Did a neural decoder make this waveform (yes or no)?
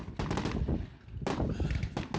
no